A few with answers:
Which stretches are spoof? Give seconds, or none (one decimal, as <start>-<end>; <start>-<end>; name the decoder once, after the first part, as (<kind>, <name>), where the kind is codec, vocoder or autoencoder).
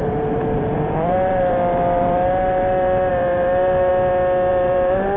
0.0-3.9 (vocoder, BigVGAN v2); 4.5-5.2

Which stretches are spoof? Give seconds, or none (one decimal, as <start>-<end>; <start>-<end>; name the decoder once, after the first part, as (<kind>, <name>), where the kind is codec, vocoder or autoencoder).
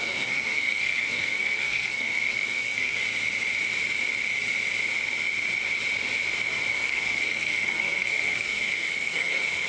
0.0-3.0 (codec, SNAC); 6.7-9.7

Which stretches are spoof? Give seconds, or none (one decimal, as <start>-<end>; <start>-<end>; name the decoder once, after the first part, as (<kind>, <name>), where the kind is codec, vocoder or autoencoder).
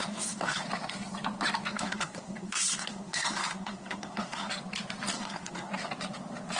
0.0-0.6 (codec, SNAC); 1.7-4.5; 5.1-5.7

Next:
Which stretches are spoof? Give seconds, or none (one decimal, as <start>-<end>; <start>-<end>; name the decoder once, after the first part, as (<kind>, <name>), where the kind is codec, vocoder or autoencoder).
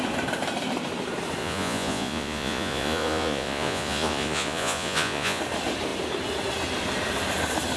1.4-5.4 (vocoder, Vocos)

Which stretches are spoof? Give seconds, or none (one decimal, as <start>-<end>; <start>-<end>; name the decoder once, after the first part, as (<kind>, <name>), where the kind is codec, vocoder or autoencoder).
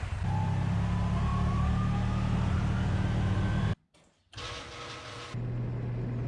none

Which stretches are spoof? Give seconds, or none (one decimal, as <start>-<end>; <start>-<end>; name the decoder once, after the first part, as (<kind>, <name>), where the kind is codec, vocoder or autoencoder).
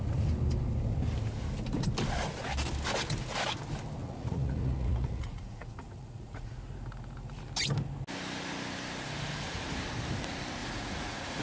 4.0-6.6 (vocoder, Vocos); 10.6-11.4